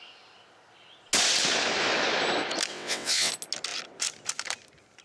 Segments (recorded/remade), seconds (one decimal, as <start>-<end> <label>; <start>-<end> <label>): 0.0-2.7 recorded; 2.7-3.3 remade; 3.3-5.0 recorded